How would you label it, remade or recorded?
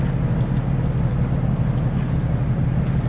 recorded